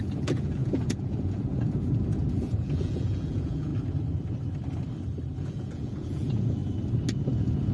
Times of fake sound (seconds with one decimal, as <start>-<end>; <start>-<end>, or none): 0.0-3.7; 5.4-6.6; 7.1-7.7